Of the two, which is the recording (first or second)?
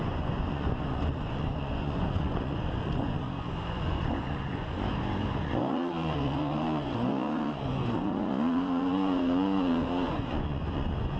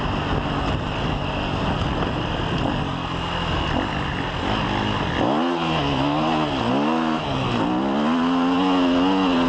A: second